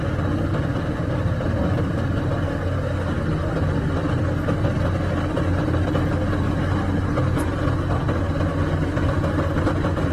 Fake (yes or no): no